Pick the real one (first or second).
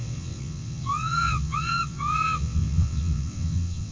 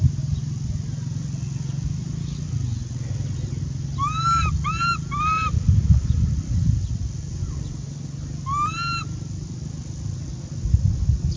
second